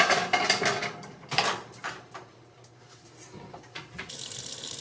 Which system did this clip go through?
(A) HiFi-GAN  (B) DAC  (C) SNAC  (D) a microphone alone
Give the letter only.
D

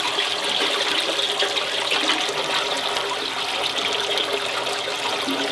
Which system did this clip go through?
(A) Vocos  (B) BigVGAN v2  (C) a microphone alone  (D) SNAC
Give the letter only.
C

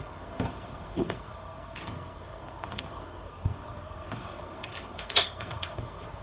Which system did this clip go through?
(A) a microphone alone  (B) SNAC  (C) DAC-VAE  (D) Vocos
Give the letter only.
B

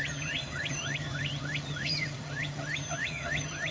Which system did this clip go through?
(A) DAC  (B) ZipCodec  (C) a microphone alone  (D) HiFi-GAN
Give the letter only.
D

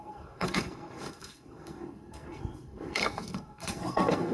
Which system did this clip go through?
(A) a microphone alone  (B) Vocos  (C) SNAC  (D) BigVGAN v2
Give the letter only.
C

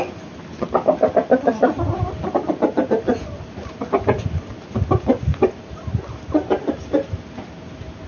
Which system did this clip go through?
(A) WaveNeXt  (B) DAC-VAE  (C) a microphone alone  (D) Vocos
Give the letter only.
C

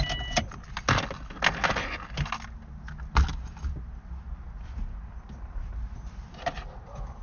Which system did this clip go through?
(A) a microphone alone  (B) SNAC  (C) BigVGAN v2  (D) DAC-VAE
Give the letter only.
A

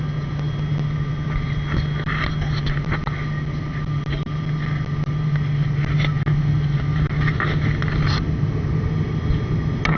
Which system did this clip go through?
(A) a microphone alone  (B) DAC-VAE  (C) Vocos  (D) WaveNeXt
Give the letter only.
A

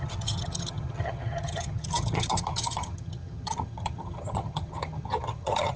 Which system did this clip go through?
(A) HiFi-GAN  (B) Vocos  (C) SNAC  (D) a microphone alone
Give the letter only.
A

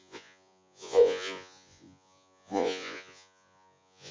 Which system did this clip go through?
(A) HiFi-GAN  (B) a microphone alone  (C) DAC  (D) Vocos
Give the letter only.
D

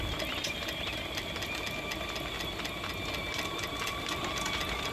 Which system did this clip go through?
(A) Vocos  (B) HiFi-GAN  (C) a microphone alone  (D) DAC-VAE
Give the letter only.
C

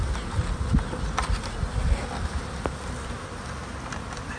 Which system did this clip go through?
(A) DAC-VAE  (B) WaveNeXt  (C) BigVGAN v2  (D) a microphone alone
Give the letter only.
D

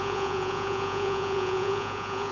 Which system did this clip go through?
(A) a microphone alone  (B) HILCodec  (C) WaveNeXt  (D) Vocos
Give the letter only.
D